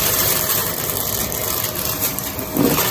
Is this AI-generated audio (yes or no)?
yes